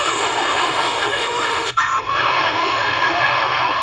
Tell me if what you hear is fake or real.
fake